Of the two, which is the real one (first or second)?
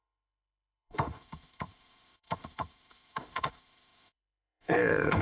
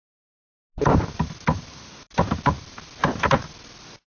second